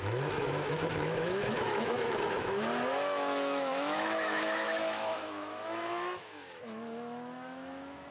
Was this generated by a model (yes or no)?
yes